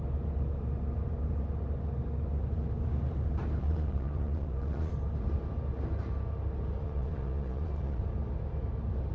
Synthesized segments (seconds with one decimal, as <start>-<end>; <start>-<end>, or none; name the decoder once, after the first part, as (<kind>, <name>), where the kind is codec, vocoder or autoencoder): 3.6-4.9 (vocoder, Vocos); 6.8-8.0